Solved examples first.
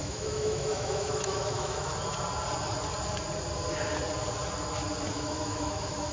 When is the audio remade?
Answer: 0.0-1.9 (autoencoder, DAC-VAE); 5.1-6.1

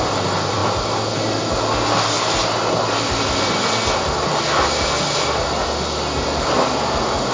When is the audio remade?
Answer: none

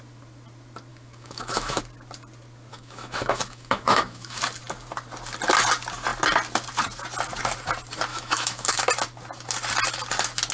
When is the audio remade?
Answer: 0.9-1.8 (autoencoder, DAC-VAE); 2.7-4.4; 8.1-8.8

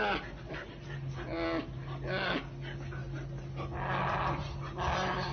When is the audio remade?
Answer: none

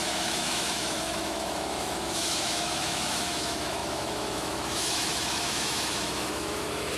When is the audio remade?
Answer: 0.0-7.0 (autoencoder, DAC-VAE)

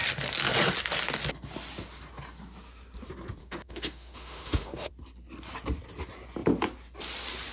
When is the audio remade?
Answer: 3.4-4.9 (autoencoder, DAC-VAE)

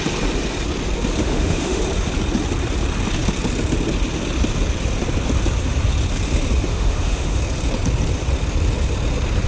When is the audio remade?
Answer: 1.2-1.8 (autoencoder, DAC-VAE); 6.7-7.4

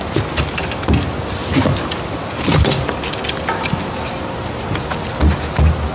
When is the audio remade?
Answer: none